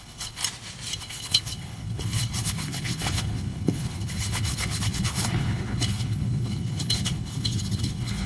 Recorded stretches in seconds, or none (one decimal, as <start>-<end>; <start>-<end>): 0.4-1.0